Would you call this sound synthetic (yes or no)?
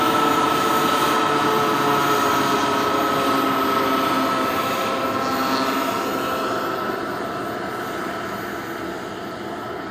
no